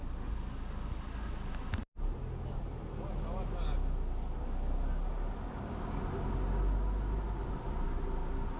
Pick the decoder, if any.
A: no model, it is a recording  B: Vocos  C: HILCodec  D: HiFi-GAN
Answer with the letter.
A